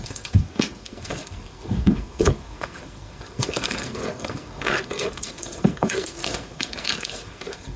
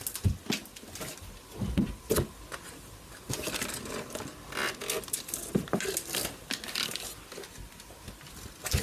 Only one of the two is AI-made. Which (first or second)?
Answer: first